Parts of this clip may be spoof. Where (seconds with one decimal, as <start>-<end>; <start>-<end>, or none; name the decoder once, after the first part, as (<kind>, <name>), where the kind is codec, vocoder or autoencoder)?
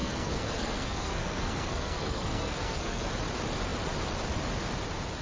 0.0-3.1 (codec, SNAC)